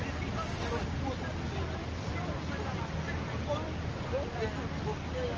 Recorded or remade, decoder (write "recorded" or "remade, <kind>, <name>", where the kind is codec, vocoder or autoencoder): recorded